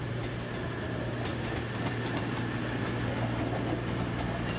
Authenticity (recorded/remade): recorded